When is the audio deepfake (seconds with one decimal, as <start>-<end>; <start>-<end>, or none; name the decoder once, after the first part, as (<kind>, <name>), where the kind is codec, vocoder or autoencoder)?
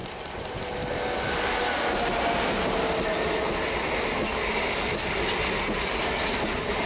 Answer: none